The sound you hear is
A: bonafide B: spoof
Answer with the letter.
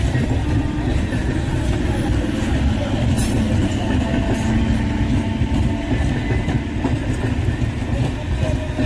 A